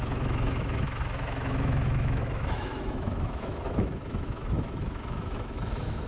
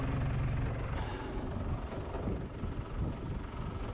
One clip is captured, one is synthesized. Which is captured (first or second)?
second